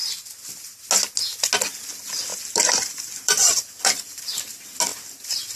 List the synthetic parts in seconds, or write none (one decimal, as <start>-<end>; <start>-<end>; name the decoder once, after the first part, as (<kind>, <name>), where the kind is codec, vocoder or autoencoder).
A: 2.3-4.2 (vocoder, BigVGAN v2); 4.9-5.6